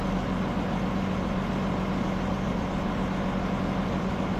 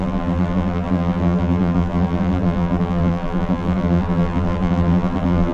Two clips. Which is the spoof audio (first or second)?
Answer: second